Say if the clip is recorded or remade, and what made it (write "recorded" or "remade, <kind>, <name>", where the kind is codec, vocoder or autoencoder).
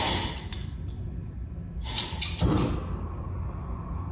recorded